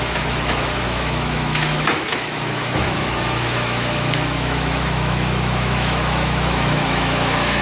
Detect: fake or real fake